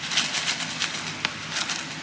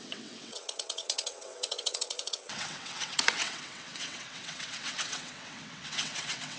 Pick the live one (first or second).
first